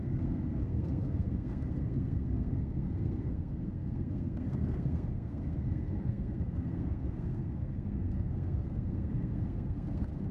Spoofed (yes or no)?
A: yes